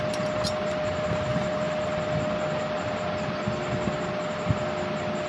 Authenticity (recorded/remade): recorded